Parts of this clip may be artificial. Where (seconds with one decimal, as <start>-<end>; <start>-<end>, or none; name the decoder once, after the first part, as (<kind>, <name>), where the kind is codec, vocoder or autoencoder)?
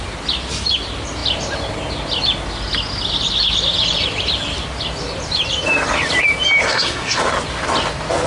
6.6-7.2 (codec, SNAC)